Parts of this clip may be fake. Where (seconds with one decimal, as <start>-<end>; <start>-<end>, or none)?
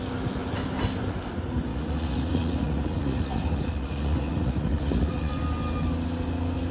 1.7-5.3